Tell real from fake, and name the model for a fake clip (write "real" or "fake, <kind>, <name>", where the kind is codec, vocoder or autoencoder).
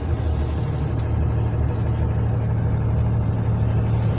real